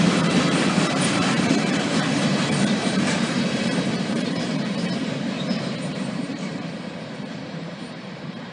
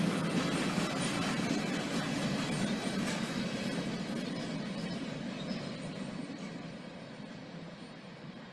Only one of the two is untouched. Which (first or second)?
second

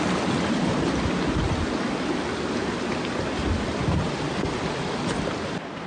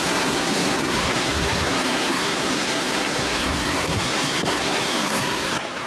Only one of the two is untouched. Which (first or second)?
first